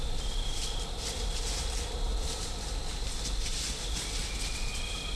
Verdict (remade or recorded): recorded